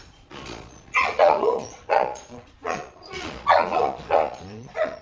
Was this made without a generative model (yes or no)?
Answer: no